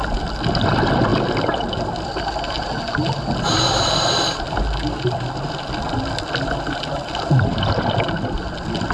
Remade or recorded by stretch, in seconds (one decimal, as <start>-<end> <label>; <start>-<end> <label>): 0.0-8.9 recorded